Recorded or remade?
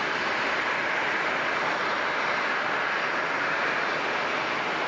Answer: recorded